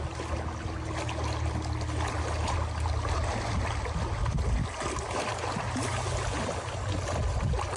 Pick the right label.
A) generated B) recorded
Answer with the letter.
B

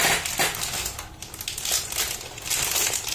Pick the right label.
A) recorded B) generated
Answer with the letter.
A